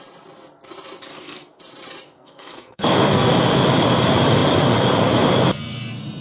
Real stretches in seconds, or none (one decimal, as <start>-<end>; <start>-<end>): 0.0-1.1; 1.6-2.1; 3.3-6.2